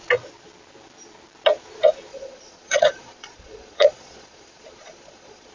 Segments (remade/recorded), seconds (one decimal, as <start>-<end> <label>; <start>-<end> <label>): 0.0-2.1 recorded; 2.1-5.5 remade